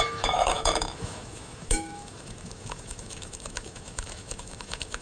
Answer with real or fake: fake